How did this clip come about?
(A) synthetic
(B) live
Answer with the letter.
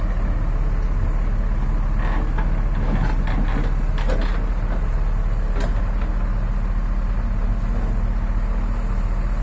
B